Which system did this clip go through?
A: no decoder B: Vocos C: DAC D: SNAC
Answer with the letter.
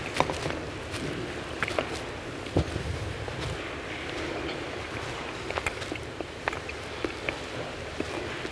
A